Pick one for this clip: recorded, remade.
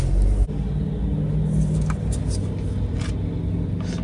recorded